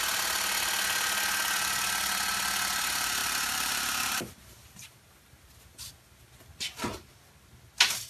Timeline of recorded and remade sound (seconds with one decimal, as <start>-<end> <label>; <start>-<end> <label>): 0.0-3.2 recorded; 3.2-5.9 remade; 5.9-6.5 recorded; 6.5-7.1 remade; 7.1-8.1 recorded